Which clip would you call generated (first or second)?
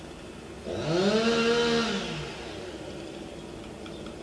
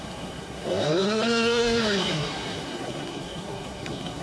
second